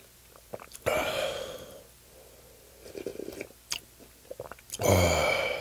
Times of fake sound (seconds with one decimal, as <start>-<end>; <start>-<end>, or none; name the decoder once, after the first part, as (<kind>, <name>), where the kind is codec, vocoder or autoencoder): none

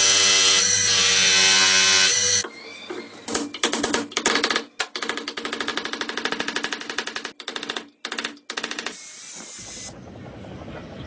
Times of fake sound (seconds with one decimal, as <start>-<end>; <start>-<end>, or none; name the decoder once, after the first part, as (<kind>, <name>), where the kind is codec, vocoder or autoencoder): none

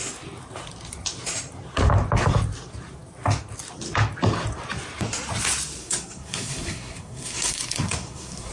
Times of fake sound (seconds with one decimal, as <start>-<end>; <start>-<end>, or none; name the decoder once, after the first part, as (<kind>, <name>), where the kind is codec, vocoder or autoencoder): 5.8-8.5 (codec, SNAC)

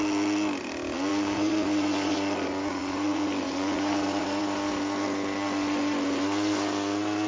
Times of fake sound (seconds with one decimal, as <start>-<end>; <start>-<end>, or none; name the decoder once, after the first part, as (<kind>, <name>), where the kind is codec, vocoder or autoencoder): 1.1-4.4 (vocoder, Vocos)

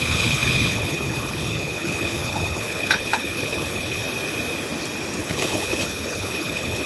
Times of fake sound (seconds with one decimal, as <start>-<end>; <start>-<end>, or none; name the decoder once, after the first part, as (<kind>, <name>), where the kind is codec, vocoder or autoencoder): 0.0-4.0 (codec, HILCodec); 5.2-6.9

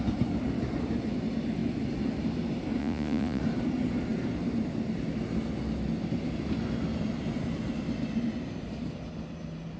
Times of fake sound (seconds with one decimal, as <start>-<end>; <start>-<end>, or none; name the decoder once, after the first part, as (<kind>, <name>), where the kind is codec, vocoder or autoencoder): 2.8-3.4 (vocoder, Vocos)

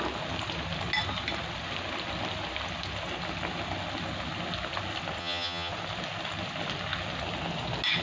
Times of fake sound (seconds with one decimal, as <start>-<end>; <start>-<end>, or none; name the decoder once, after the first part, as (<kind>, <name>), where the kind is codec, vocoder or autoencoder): 5.2-5.7 (vocoder, HiFi-GAN)

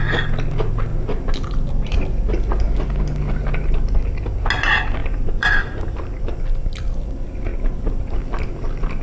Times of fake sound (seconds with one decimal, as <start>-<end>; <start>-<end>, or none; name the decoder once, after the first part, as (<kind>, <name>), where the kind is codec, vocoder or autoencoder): 5.0-6.4 (vocoder, BigVGAN v2); 7.5-8.1